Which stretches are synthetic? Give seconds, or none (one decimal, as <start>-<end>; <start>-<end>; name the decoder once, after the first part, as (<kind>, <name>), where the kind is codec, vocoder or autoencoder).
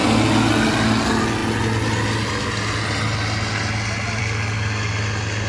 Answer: none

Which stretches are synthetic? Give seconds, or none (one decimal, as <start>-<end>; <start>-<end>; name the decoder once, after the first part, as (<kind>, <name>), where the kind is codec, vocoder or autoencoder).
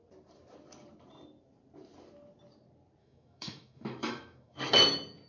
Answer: 3.0-4.6 (autoencoder, DAC-VAE)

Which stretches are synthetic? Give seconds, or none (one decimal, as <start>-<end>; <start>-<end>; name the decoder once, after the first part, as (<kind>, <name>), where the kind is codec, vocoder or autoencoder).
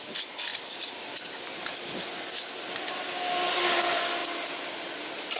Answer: none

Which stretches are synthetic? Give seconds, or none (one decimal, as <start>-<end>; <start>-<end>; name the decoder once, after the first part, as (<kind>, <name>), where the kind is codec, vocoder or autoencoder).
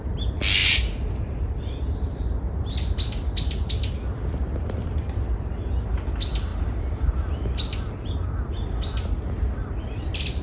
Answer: none